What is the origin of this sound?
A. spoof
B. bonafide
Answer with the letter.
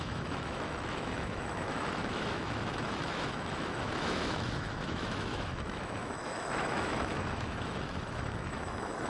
A